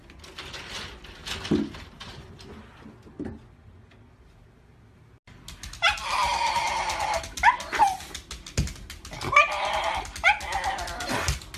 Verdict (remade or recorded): recorded